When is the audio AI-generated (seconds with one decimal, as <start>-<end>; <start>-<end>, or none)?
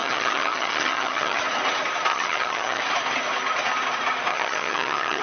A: 0.0-1.4; 2.1-2.8; 4.3-5.2